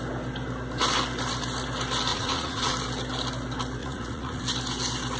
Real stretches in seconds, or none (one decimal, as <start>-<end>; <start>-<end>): 0.0-2.1; 2.7-3.8; 4.4-5.2